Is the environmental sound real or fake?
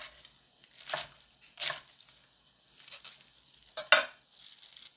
real